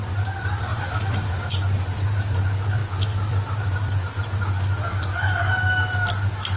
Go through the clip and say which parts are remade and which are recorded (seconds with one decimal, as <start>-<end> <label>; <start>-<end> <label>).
0.0-0.7 recorded; 0.7-1.5 remade; 1.5-6.6 recorded